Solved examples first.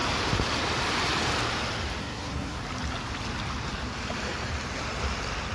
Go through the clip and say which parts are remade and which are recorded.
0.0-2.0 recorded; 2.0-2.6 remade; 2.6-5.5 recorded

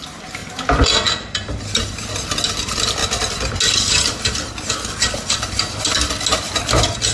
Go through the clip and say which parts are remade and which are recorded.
0.0-7.1 recorded

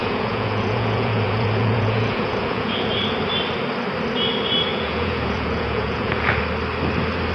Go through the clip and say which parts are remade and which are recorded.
0.0-2.9 remade; 2.9-4.7 recorded; 4.7-6.4 remade; 6.4-7.3 recorded

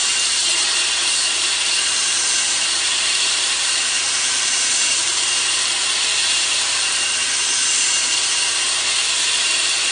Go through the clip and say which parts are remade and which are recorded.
0.0-1.6 recorded; 1.6-7.2 remade; 7.2-9.3 recorded; 9.3-9.9 remade

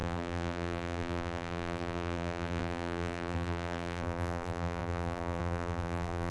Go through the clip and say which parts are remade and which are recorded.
0.0-6.3 remade

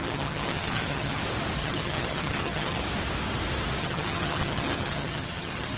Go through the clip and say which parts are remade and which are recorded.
0.0-1.2 remade; 1.2-1.6 recorded; 1.6-2.8 remade; 2.8-3.8 recorded; 3.8-5.8 remade

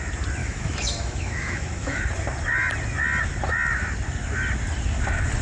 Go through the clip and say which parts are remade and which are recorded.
0.0-0.4 recorded; 0.4-2.0 remade; 2.0-5.4 recorded